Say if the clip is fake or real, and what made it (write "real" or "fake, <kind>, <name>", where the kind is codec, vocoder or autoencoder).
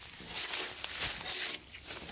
real